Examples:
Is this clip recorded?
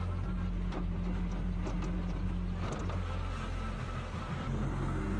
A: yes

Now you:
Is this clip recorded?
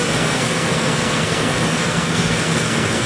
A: no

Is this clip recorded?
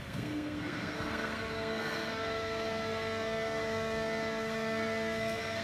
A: no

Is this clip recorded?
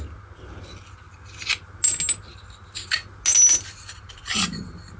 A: yes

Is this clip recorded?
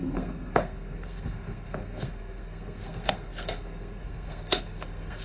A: no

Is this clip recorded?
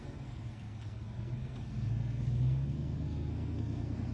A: no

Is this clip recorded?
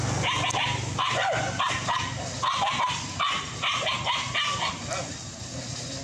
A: yes